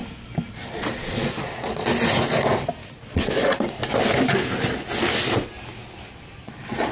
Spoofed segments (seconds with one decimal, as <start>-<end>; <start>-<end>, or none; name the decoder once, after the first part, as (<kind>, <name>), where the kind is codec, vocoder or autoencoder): 0.9-1.9 (vocoder, Vocos); 3.1-3.8; 6.1-6.9